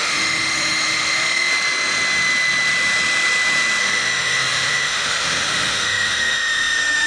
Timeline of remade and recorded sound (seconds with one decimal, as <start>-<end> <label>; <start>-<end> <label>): 0.0-1.5 remade; 1.5-3.8 recorded; 3.8-7.1 remade

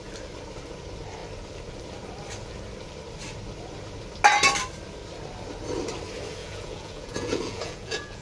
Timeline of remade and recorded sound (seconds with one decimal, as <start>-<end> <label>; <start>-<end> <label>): 0.0-6.4 recorded; 6.4-8.2 remade

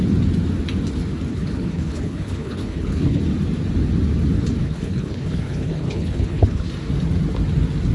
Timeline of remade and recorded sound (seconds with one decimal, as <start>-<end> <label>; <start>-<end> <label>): 0.0-1.3 recorded; 1.3-3.2 remade; 3.2-4.6 recorded; 4.6-6.7 remade; 6.7-7.9 recorded